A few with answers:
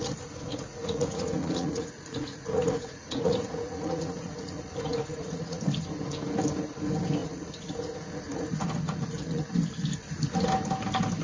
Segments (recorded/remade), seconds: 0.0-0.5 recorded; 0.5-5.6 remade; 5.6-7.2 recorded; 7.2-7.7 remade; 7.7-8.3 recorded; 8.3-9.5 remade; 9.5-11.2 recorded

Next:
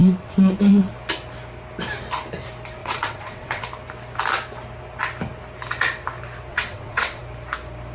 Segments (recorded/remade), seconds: 0.0-0.9 remade; 0.9-2.8 recorded; 2.8-3.6 remade; 3.6-6.5 recorded; 6.5-7.2 remade; 7.2-7.9 recorded

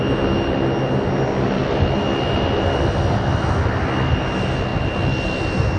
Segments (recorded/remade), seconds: 0.0-5.8 recorded

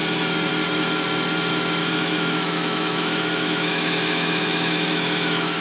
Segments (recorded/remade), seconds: 0.0-1.8 recorded; 1.8-5.6 remade

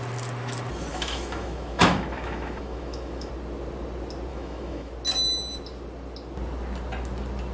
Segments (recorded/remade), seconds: 0.0-0.9 recorded; 0.9-3.3 remade; 3.3-4.3 recorded; 4.3-4.9 remade; 4.9-7.5 recorded